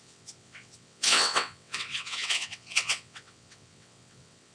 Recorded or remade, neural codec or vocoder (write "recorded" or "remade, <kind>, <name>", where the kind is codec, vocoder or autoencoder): remade, vocoder, WaveNeXt